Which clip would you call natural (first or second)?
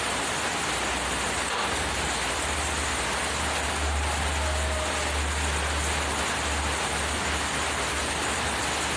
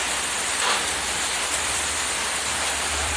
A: first